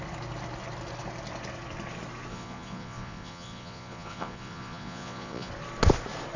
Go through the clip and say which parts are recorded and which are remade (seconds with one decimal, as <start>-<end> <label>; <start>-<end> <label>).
0.0-2.3 recorded; 2.3-5.5 remade; 5.5-6.4 recorded